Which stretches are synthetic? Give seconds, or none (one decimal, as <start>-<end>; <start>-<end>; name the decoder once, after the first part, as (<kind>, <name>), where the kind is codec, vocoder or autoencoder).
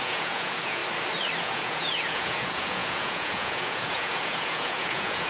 0.0-0.8 (vocoder, Vocos); 1.4-5.3